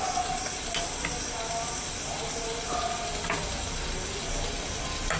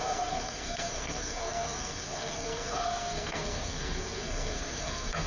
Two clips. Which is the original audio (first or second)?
first